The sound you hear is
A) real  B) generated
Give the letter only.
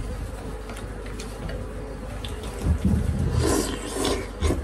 A